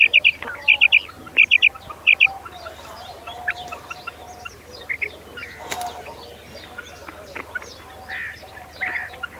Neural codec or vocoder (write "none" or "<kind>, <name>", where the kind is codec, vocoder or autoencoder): none